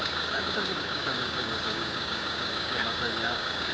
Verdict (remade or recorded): remade